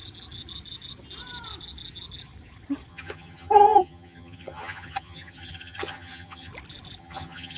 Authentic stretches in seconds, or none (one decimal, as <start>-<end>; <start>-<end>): 0.0-2.9; 6.5-7.0